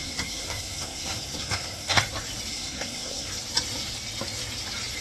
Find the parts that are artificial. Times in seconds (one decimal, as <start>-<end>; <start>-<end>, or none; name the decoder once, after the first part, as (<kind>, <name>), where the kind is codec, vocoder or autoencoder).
0.0-2.0 (codec, SNAC); 2.5-3.3